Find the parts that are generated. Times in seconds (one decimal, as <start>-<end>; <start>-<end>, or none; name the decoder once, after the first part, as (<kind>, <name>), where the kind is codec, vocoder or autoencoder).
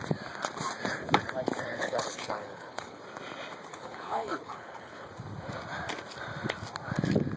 1.7-3.0 (codec, HILCodec); 3.7-5.1